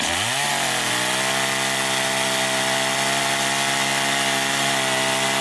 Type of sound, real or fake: real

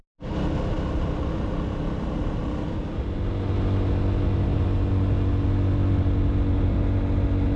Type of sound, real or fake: real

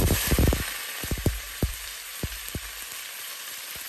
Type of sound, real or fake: fake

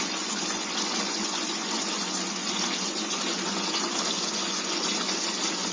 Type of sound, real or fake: fake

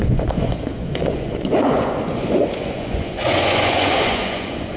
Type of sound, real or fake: fake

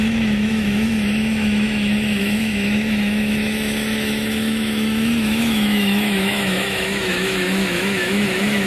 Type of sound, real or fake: fake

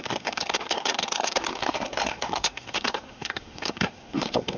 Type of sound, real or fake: fake